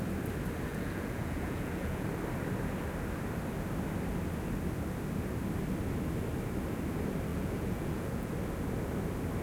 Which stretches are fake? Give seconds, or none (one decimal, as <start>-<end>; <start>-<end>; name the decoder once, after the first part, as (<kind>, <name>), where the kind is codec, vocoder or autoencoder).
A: 0.7-2.1 (vocoder, Vocos); 7.3-8.3